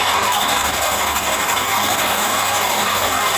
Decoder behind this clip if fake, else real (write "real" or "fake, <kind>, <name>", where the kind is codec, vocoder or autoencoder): fake, codec, DAC